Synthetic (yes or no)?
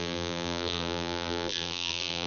yes